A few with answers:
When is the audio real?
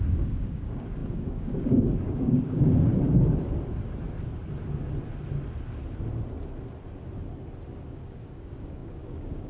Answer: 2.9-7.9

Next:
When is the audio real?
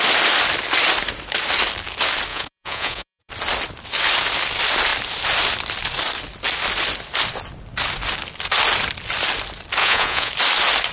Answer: 0.0-2.3; 3.3-9.8; 10.3-10.9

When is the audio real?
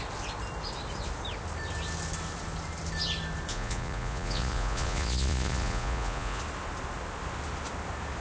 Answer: 0.0-3.5; 6.4-8.2